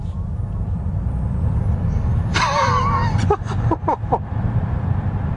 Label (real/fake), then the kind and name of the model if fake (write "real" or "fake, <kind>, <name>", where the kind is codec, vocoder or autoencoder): fake, vocoder, BigVGAN v2